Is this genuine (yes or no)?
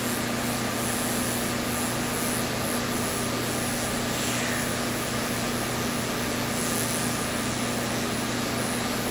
yes